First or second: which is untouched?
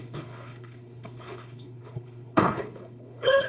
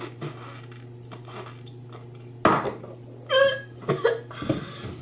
second